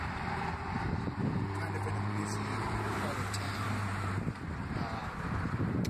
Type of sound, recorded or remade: remade